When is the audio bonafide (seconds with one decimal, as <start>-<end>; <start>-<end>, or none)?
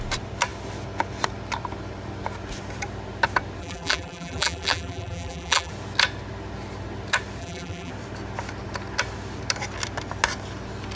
0.0-3.6; 5.7-7.4; 7.9-11.0